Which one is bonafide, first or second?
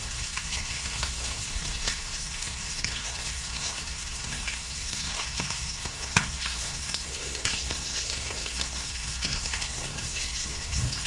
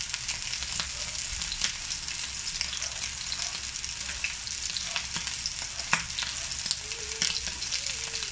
second